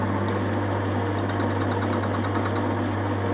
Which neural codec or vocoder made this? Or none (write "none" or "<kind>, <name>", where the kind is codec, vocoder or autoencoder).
none